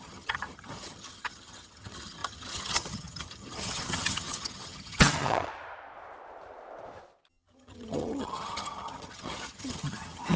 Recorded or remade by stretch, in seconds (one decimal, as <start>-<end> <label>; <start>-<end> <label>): 0.0-5.5 remade; 5.5-7.3 recorded; 7.3-10.4 remade